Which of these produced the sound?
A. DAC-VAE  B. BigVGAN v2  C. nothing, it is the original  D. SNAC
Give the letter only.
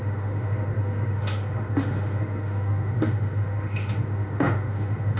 A